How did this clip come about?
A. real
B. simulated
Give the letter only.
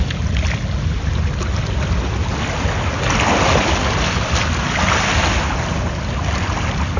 A